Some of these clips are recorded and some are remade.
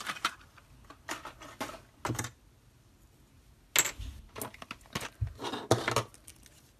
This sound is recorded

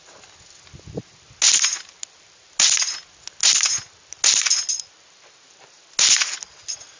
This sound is recorded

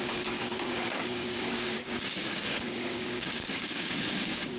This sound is remade